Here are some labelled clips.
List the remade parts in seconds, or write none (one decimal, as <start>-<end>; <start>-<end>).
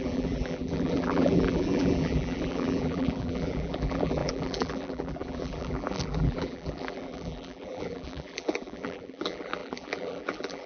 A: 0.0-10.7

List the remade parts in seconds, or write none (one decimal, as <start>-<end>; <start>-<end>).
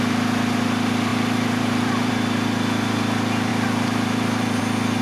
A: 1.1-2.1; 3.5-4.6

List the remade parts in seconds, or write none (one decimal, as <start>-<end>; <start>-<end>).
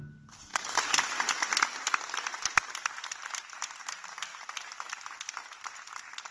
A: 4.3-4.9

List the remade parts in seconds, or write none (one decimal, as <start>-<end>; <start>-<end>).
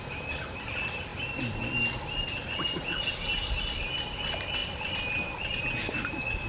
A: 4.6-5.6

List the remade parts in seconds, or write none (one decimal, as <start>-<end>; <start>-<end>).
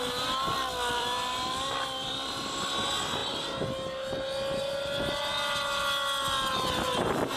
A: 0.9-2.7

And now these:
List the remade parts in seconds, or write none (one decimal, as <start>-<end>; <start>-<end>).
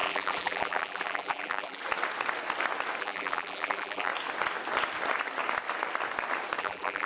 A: 0.0-1.8; 3.0-4.1; 6.6-7.1